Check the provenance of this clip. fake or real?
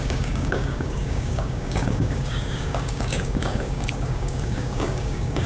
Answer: fake